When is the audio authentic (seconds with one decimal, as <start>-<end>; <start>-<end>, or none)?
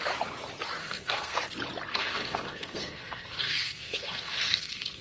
0.0-0.8; 1.4-1.9